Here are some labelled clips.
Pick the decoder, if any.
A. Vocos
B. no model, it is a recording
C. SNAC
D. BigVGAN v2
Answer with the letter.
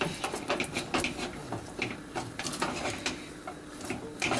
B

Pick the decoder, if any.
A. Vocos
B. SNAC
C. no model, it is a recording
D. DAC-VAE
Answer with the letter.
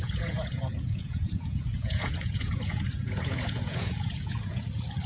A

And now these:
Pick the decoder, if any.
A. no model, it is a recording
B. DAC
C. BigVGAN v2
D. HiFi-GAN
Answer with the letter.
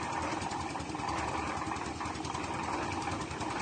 C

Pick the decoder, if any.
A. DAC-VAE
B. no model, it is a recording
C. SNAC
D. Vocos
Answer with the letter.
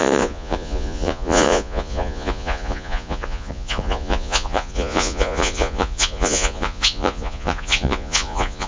D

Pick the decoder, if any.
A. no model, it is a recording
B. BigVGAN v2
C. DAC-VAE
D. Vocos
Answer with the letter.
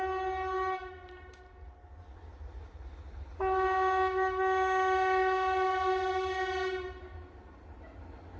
A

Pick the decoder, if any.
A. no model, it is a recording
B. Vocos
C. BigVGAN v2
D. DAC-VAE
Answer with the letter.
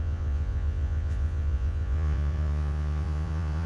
B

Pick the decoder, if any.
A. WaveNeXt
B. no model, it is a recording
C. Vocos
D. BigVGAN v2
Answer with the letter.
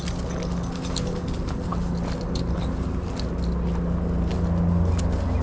B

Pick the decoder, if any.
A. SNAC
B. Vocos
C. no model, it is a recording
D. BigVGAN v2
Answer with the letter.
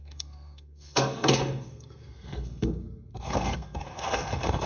A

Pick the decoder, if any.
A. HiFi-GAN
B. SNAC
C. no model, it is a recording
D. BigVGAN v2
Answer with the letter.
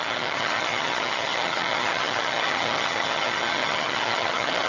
A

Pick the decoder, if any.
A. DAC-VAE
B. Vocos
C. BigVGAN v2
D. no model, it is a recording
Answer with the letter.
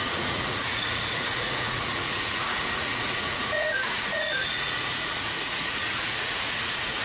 B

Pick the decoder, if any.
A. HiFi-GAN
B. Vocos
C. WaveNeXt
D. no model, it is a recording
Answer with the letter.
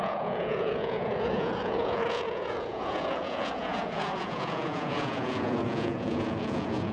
B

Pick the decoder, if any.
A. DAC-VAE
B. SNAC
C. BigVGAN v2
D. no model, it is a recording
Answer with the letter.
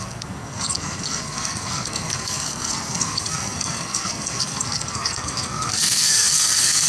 B